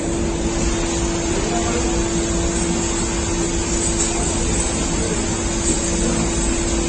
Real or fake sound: real